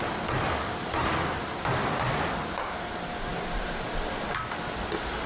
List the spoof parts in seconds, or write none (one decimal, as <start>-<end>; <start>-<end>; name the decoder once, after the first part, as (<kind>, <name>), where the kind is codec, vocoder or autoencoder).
none